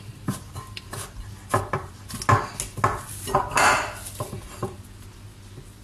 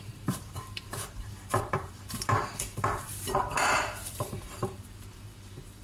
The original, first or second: first